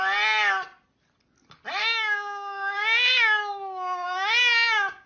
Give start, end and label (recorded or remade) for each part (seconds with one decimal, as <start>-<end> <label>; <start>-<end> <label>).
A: 0.0-1.8 recorded; 1.8-5.1 remade